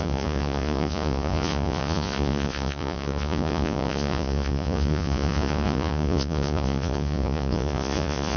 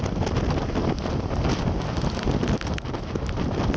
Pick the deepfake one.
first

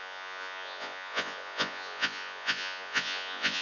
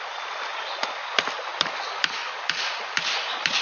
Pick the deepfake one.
first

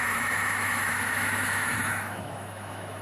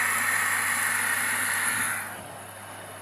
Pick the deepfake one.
first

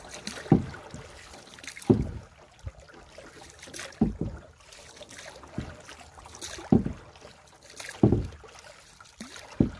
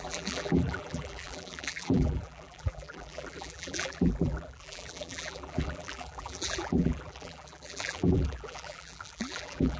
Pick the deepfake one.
second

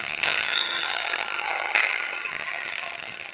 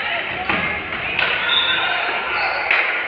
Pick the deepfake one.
first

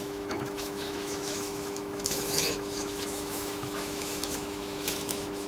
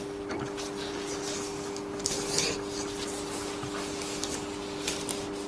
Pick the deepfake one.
first